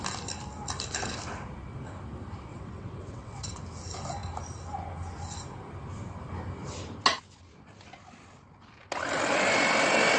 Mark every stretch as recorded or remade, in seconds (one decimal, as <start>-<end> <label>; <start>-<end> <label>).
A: 0.0-2.5 recorded; 2.5-3.6 remade; 3.6-10.2 recorded